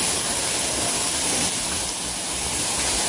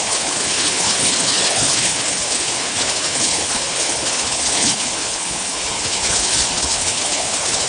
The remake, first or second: second